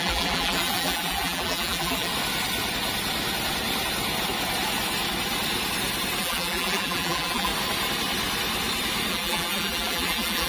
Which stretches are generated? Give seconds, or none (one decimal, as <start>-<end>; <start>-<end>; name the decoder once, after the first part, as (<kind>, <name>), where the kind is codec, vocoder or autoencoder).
0.0-2.1 (vocoder, BigVGAN v2); 6.2-7.5; 9.1-10.5